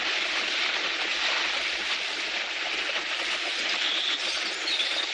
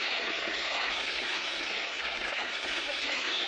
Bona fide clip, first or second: first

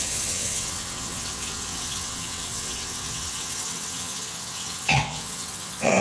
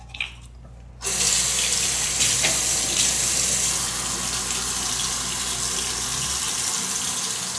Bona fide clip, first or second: second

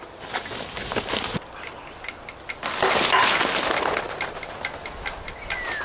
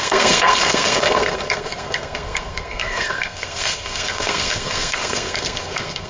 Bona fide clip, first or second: first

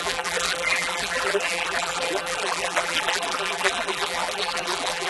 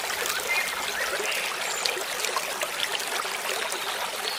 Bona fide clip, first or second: second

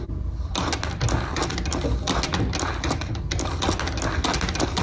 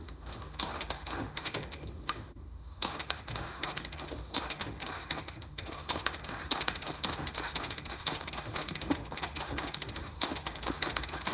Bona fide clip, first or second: first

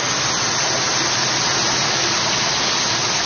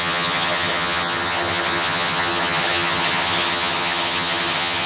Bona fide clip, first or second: first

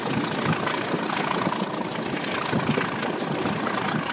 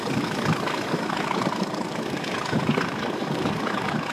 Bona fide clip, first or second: first